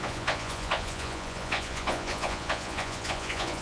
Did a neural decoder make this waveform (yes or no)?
yes